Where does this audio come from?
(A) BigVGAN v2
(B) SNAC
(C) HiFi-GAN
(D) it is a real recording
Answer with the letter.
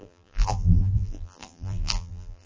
A